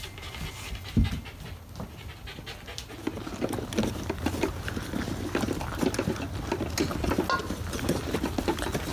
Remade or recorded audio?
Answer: recorded